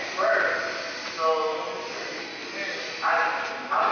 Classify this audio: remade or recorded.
recorded